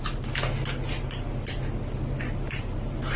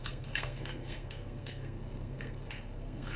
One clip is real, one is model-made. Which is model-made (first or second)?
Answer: second